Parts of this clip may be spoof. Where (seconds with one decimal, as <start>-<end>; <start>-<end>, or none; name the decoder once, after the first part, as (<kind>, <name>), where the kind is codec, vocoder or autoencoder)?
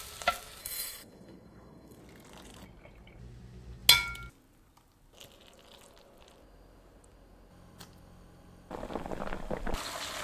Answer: 0.6-2.0 (codec, SNAC)